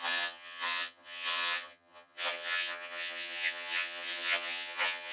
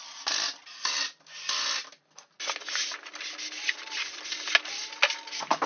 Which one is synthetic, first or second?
first